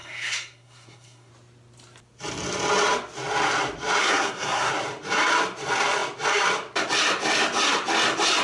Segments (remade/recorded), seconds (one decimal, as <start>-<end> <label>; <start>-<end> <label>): 0.0-1.3 remade; 1.3-4.0 recorded; 4.0-4.7 remade; 4.7-8.4 recorded